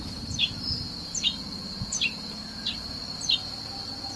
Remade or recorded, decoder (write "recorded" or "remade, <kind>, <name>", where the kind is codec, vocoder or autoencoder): recorded